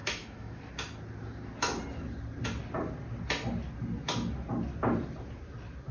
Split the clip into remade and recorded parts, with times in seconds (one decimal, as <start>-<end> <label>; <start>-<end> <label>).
0.0-0.6 remade; 0.6-5.9 recorded